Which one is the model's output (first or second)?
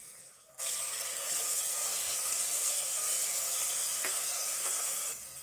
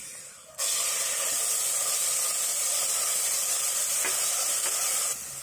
first